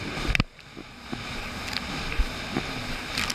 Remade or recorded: recorded